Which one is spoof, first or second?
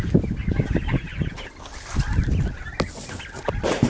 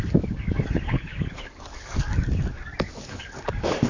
second